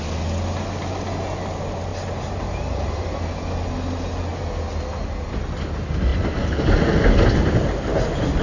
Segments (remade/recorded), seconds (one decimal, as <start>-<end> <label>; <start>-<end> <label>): 0.0-1.9 recorded; 1.9-2.4 remade; 2.4-6.1 recorded; 6.1-6.8 remade; 6.8-8.4 recorded